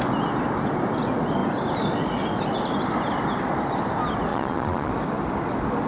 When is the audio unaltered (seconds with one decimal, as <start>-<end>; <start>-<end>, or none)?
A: 0.0-4.3; 4.9-5.9